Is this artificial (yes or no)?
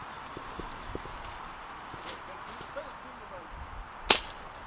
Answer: yes